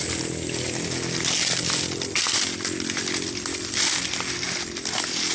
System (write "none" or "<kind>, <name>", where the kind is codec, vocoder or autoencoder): none